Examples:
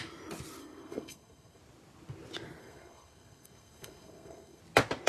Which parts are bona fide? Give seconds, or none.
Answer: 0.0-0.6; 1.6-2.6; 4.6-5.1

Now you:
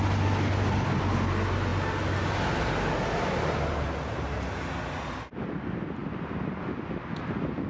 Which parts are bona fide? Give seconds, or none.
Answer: 0.0-7.7